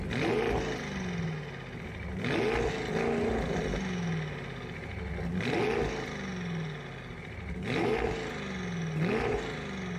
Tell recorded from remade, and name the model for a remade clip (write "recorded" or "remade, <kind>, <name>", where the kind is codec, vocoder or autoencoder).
recorded